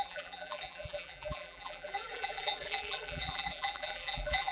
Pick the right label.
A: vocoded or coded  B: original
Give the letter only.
A